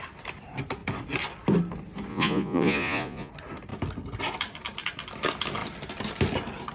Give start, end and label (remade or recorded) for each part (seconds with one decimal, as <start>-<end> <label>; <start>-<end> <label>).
0.0-2.1 recorded; 2.1-3.3 remade; 3.3-6.7 recorded